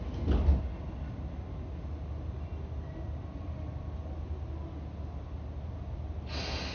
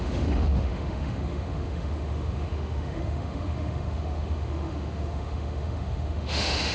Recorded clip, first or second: first